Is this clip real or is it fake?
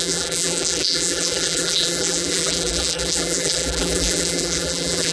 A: fake